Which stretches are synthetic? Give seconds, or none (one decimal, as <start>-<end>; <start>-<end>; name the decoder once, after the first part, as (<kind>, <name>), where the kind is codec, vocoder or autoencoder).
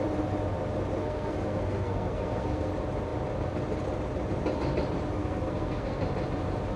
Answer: 1.0-2.7 (codec, SNAC); 5.2-6.0